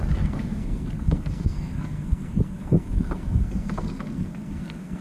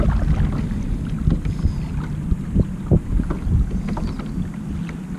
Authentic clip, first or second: second